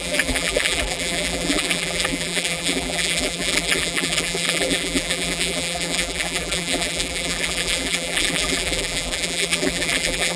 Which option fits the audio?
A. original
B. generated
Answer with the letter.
B